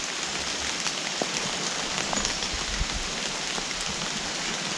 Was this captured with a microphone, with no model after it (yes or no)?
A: yes